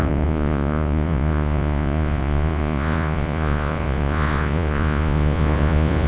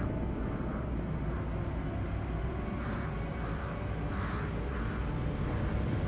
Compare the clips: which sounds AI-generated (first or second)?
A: first